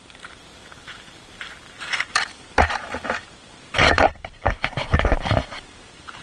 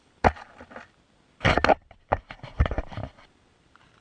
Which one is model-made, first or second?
first